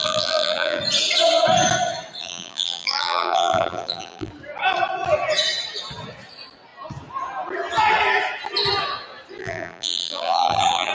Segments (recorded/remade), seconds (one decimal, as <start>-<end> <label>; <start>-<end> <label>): 0.0-0.8 remade; 0.8-2.2 recorded; 2.2-4.3 remade; 4.3-9.4 recorded; 9.4-10.9 remade